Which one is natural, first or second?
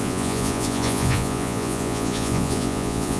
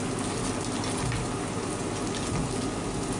second